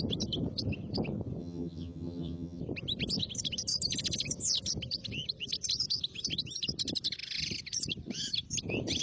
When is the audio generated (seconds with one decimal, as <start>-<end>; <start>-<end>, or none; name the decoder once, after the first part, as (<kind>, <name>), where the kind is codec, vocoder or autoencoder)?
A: 1.4-2.6 (vocoder, HiFi-GAN)